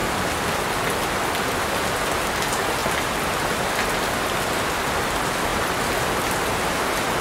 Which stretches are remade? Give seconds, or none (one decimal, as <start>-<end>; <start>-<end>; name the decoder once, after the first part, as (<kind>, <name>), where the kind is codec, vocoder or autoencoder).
none